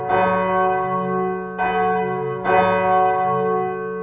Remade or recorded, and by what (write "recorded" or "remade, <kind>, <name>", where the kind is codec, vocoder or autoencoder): recorded